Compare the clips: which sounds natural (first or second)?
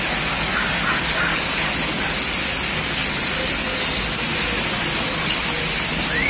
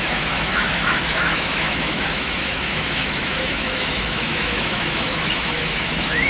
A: first